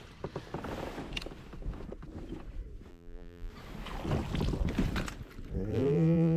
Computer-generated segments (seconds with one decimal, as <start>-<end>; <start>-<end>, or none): 2.9-3.5; 5.7-6.4